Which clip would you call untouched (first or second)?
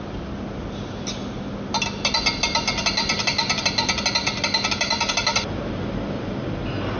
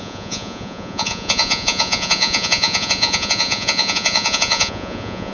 first